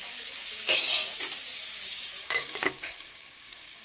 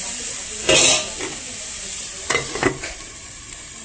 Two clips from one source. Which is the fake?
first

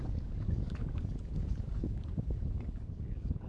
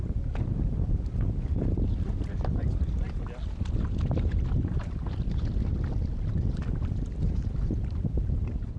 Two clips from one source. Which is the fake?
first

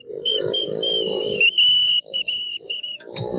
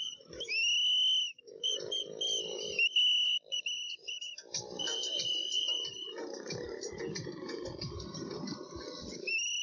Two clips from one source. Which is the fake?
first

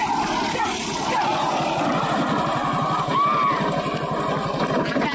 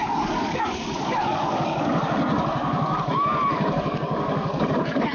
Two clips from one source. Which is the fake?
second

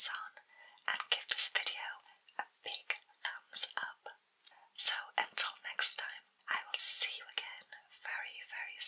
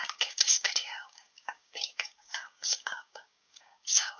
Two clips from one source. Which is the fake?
second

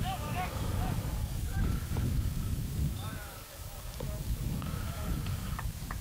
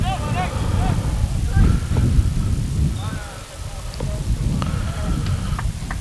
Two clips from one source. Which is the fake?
first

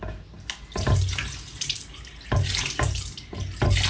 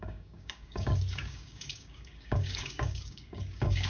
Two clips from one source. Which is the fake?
second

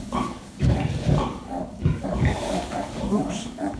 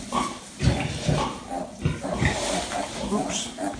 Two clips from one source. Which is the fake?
first